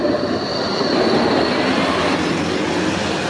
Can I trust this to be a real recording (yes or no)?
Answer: yes